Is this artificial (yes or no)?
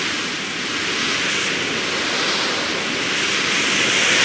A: no